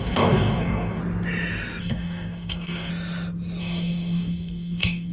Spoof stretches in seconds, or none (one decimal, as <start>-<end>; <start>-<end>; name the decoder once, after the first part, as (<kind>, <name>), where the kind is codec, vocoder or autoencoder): 0.0-1.0 (codec, DAC); 1.8-2.9; 3.6-5.1

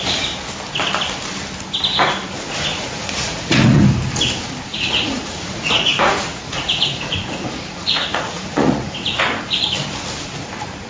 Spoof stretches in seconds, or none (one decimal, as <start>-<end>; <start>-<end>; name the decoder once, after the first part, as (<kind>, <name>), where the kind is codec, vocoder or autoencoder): 2.7-3.8 (vocoder, Vocos); 4.7-9.2

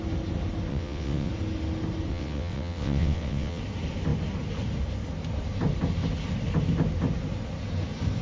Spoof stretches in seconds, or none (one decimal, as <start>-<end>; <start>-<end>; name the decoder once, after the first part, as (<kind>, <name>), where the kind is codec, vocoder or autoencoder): 0.7-1.3 (vocoder, WaveNeXt); 2.1-3.6

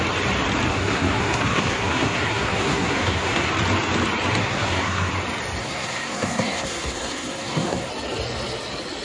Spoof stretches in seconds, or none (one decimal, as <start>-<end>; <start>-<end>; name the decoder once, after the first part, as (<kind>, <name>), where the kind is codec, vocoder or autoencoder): 0.7-3.5 (codec, SNAC); 4.4-5.1; 5.6-7.9

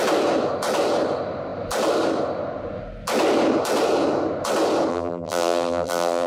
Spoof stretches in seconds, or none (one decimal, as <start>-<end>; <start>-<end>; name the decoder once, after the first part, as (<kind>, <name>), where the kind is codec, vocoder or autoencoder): 4.9-6.3 (vocoder, BigVGAN v2)

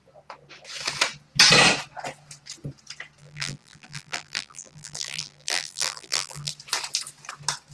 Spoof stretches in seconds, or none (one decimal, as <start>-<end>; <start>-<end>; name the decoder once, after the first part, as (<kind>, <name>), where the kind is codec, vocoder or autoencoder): 3.2-6.5 (vocoder, BigVGAN v2)

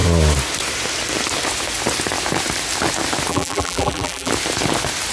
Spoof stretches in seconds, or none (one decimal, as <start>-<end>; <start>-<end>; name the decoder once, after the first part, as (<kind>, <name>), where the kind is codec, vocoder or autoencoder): 3.3-4.3 (vocoder, BigVGAN v2)